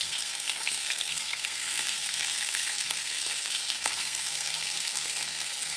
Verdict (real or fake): fake